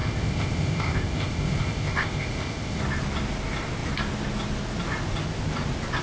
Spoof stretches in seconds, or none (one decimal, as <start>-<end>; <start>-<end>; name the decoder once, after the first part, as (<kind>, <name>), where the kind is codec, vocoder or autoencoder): 0.0-2.8 (codec, ZipCodec)